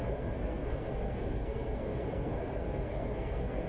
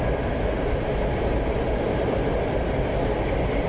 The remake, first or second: first